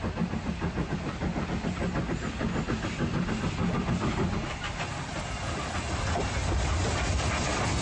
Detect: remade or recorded recorded